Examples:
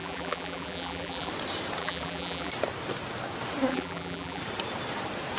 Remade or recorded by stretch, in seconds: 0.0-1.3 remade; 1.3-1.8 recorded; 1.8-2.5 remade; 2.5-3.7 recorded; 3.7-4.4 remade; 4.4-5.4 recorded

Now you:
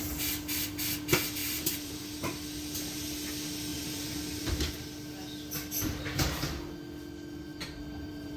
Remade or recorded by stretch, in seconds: 0.0-1.4 recorded; 1.4-2.0 remade; 2.0-3.7 recorded; 3.7-4.4 remade; 4.4-7.5 recorded; 7.5-8.4 remade

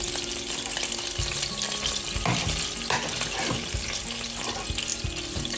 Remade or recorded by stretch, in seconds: 0.0-4.9 recorded; 4.9-5.6 remade

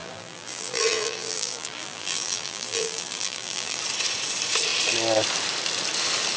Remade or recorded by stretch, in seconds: 0.0-3.8 remade; 3.8-6.4 recorded

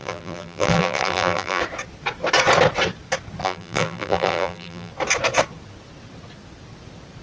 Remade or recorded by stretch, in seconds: 0.0-1.6 remade; 1.6-3.4 recorded; 3.4-4.9 remade; 4.9-7.2 recorded

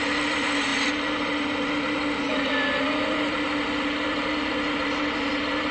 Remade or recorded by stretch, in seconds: 0.0-5.7 remade

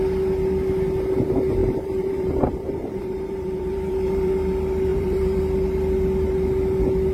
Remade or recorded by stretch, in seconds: 0.0-1.6 recorded; 1.6-4.3 remade; 4.3-4.9 recorded; 4.9-5.4 remade; 5.4-7.1 recorded

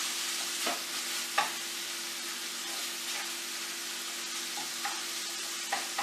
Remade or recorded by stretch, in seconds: 0.0-6.0 recorded